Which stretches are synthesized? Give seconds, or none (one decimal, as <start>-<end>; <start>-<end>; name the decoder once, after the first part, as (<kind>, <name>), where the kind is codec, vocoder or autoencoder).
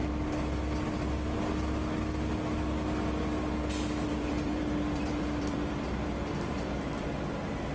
4.1-7.7 (vocoder, BigVGAN v2)